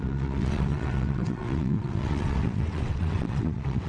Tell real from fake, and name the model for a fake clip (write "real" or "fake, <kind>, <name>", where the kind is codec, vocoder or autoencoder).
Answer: fake, vocoder, WaveNeXt